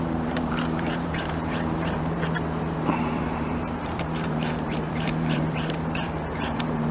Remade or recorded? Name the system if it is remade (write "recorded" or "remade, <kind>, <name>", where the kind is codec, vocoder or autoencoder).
remade, vocoder, BigVGAN v2